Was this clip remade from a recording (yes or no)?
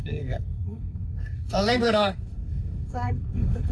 yes